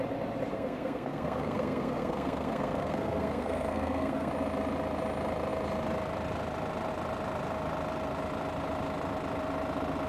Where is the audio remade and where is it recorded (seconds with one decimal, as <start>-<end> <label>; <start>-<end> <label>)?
0.0-0.5 recorded; 0.5-4.3 remade; 4.3-10.1 recorded